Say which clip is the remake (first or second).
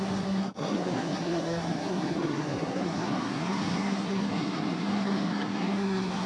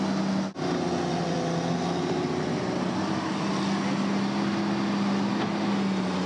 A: first